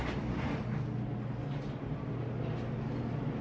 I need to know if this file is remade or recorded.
recorded